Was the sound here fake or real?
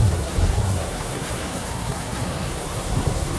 fake